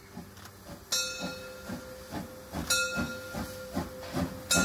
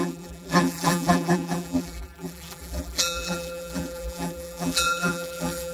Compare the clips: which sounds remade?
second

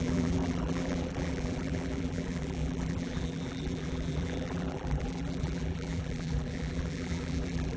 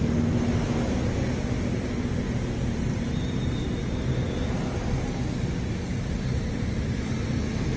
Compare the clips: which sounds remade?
first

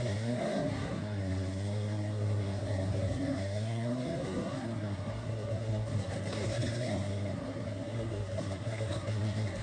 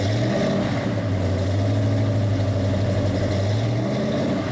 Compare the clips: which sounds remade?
first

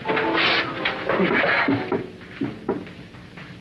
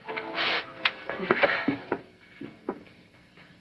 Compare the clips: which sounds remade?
second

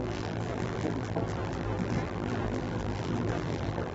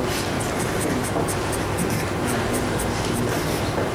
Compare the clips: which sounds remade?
first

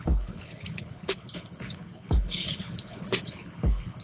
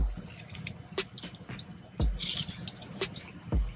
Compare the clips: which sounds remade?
first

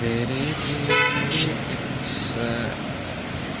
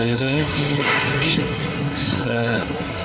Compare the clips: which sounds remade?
second